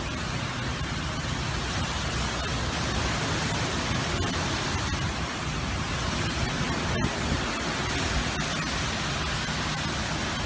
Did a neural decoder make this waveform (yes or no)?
no